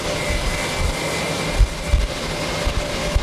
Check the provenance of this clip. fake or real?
real